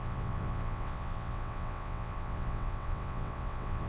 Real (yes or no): no